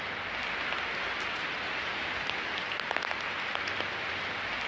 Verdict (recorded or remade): recorded